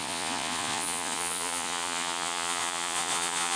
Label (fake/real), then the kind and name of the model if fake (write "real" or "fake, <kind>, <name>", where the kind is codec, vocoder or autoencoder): fake, vocoder, Vocos